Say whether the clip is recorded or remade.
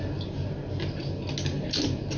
recorded